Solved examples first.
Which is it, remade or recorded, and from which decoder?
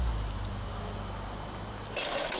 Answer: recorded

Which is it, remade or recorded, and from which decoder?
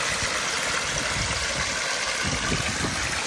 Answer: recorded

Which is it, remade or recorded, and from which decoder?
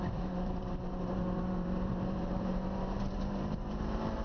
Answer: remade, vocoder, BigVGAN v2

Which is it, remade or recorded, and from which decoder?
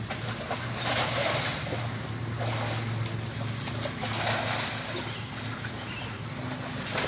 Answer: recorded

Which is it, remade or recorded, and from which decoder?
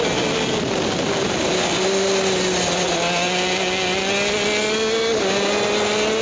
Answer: recorded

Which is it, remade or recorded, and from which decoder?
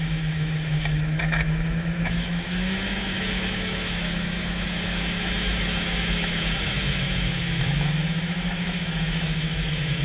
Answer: remade, autoencoder, DAC-VAE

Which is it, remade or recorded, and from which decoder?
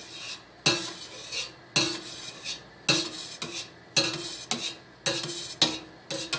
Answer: recorded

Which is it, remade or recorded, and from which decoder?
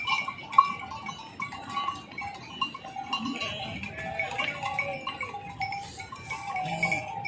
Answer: recorded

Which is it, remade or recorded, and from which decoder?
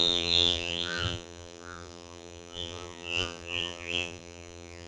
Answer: remade, vocoder, BigVGAN v2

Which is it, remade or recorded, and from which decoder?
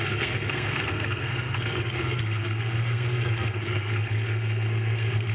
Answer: remade, codec, SNAC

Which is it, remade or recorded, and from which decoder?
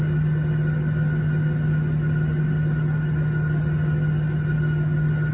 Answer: recorded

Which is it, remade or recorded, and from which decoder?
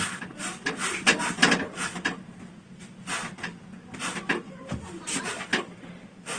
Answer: recorded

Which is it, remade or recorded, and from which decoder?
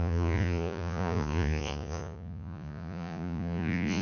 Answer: remade, vocoder, Vocos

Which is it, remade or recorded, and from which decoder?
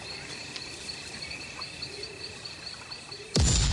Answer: recorded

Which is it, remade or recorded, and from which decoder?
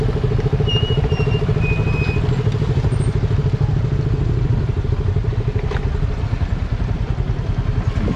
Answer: recorded